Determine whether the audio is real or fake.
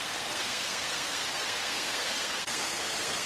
fake